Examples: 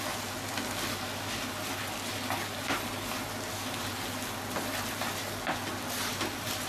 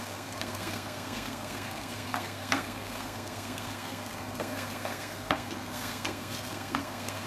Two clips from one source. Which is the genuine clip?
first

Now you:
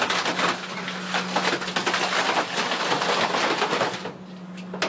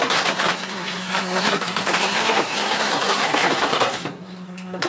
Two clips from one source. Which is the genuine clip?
first